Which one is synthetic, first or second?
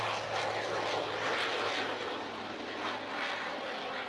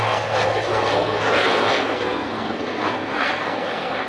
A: second